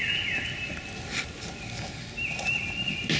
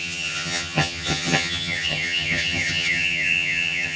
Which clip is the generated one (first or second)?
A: second